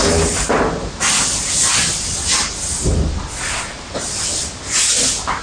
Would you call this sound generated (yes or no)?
no